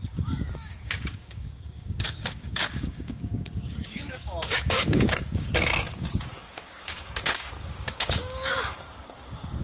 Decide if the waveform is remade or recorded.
remade